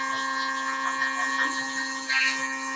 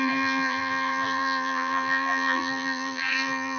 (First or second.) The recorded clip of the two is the first